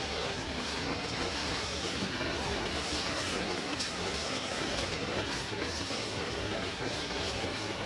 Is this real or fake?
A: fake